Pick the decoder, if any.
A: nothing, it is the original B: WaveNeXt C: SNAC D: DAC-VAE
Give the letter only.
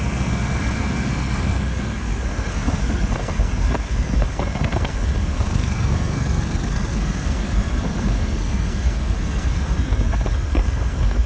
C